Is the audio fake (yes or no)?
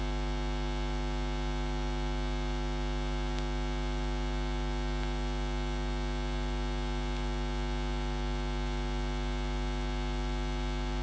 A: no